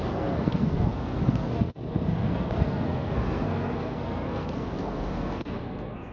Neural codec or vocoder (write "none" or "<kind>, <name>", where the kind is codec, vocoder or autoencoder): codec, SNAC